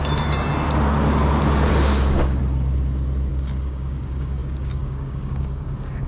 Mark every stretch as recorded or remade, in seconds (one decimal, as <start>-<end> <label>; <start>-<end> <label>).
0.0-0.5 remade; 0.5-1.7 recorded; 1.7-2.4 remade; 2.4-3.3 recorded; 3.3-6.1 remade